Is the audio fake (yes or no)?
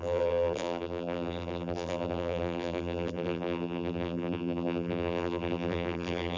yes